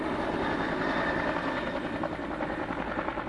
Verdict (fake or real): fake